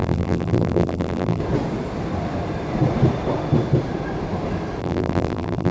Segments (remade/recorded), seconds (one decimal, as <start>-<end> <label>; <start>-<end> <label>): 0.0-1.4 remade; 1.4-4.8 recorded; 4.8-5.7 remade